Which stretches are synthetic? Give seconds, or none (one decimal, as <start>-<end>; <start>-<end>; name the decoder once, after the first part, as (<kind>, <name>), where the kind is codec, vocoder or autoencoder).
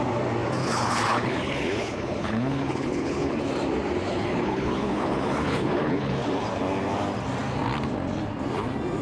0.6-3.5 (codec, HILCodec); 4.1-6.3